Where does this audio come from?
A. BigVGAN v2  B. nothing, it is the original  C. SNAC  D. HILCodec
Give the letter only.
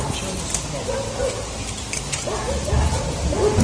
B